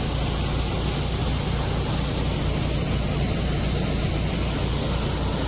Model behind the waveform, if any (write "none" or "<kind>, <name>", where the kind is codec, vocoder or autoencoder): none